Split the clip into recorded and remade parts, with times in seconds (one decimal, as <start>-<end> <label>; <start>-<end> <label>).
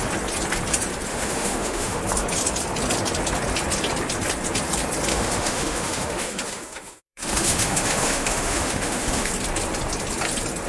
0.0-1.1 recorded; 1.1-2.0 remade; 2.0-5.1 recorded; 5.1-9.3 remade; 9.3-10.7 recorded